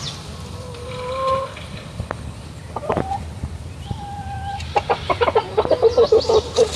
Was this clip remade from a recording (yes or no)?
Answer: no